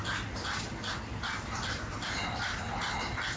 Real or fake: real